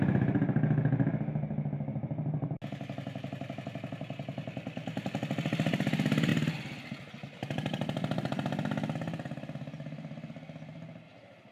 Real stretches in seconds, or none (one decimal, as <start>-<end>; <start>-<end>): 0.0-11.5